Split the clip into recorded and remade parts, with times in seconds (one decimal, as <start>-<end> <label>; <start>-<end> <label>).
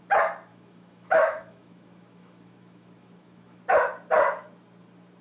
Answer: 0.0-0.5 recorded; 0.5-3.6 remade; 3.6-5.2 recorded